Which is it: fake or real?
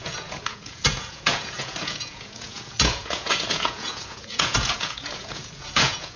fake